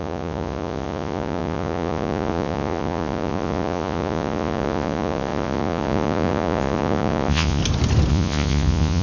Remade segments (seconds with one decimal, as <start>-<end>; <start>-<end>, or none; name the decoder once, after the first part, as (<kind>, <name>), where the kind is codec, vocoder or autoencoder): 0.0-7.6 (vocoder, Vocos); 8.1-9.0